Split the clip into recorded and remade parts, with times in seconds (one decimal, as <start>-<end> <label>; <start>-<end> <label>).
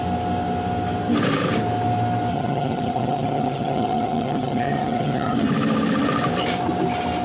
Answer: 0.0-2.3 recorded; 2.3-5.5 remade; 5.5-7.2 recorded